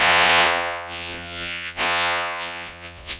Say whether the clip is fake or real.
fake